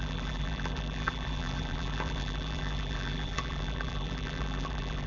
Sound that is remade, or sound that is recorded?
remade